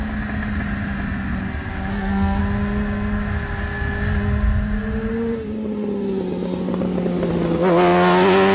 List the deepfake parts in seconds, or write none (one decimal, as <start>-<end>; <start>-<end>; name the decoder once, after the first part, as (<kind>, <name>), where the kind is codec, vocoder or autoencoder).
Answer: 1.9-2.4 (codec, SNAC)